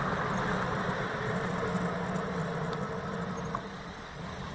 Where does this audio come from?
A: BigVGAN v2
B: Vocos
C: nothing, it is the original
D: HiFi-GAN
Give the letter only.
C